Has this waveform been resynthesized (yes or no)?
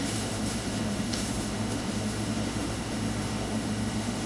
yes